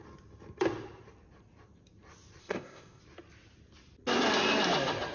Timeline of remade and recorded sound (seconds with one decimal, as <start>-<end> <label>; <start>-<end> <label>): 0.0-2.4 recorded; 2.4-3.0 remade; 3.0-5.1 recorded